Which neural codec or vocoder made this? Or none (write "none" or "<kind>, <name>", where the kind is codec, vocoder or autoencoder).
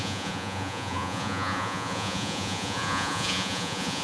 vocoder, Vocos